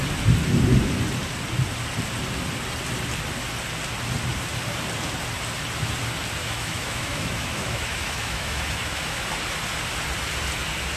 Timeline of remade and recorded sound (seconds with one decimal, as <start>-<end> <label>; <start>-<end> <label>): 0.0-6.4 recorded; 6.4-9.3 remade; 9.3-11.0 recorded